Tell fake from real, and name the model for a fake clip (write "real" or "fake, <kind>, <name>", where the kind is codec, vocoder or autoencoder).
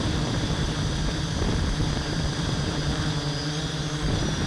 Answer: fake, vocoder, BigVGAN v2